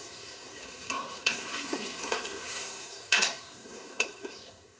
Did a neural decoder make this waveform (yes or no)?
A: yes